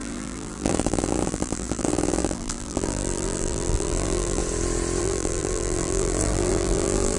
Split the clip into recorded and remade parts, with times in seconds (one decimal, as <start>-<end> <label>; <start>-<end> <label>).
0.0-4.4 remade; 4.4-5.0 recorded; 5.0-7.2 remade